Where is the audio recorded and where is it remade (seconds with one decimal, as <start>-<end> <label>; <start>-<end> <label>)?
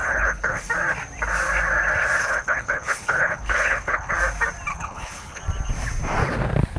0.0-0.7 remade; 0.7-2.2 recorded; 2.2-4.1 remade; 4.1-4.7 recorded; 4.7-5.4 remade; 5.4-6.8 recorded